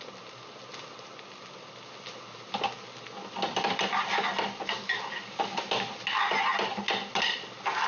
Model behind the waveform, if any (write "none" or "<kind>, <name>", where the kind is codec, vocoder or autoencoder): none